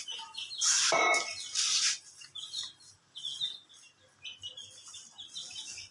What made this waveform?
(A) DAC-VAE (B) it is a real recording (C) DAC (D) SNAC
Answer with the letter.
B